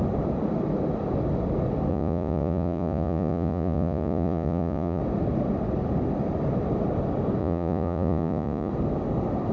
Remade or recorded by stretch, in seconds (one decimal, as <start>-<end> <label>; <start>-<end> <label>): 0.0-1.9 recorded; 1.9-5.0 remade; 5.0-7.4 recorded; 7.4-8.7 remade; 8.7-9.5 recorded